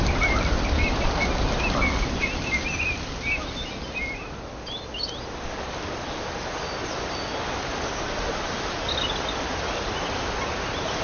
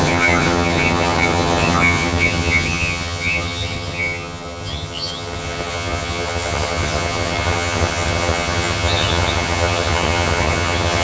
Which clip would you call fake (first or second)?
second